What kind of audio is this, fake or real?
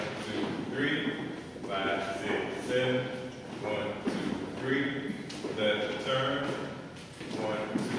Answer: real